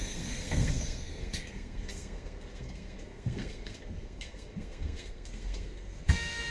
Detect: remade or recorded remade